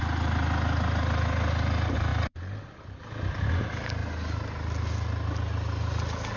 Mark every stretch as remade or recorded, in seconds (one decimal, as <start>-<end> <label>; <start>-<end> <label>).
0.0-6.4 recorded